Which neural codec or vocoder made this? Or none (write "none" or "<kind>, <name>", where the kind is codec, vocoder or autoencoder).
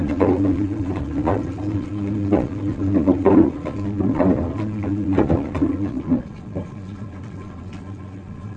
vocoder, Vocos